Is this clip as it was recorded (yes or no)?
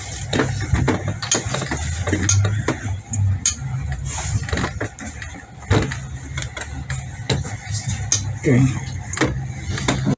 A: yes